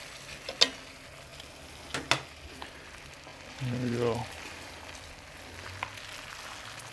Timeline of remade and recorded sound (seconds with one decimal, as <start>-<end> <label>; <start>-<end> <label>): 0.0-3.3 recorded; 3.3-5.1 remade; 5.1-6.9 recorded